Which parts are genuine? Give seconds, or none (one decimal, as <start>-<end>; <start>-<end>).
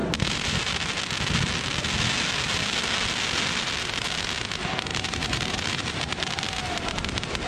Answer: 0.6-4.9; 5.9-7.5